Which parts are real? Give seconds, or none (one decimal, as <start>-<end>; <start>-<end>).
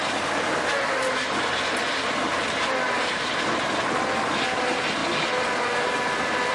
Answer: 0.0-6.5